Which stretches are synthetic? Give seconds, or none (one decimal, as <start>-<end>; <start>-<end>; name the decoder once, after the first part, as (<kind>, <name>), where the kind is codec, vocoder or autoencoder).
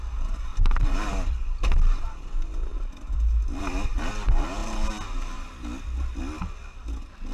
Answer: 0.5-1.1 (vocoder, BigVGAN v2); 2.7-4.0; 4.6-6.2